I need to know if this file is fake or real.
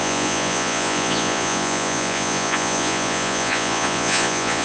fake